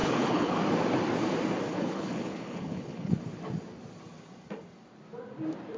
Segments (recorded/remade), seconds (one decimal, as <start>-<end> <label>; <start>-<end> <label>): 0.0-0.6 remade; 0.6-1.7 recorded; 1.7-3.2 remade; 3.2-5.8 recorded